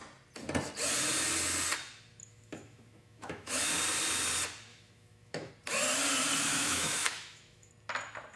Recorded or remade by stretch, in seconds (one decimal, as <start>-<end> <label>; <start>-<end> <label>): 0.0-2.2 recorded; 2.2-3.7 remade; 3.7-4.7 recorded; 4.7-5.5 remade; 5.5-6.5 recorded; 6.5-7.7 remade; 7.7-8.4 recorded